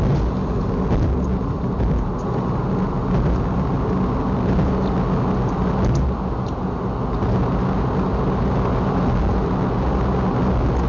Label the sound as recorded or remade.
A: recorded